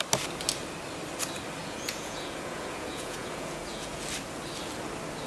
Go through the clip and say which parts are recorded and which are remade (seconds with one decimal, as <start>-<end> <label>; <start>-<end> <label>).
0.0-1.6 recorded; 1.6-4.0 remade; 4.0-5.3 recorded